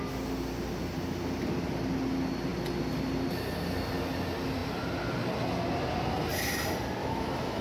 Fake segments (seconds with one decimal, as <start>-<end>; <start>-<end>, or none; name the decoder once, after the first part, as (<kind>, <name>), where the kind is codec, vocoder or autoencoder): 7.0-7.6 (autoencoder, DAC-VAE)